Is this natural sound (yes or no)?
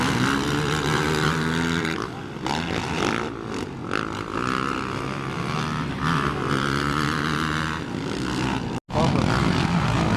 yes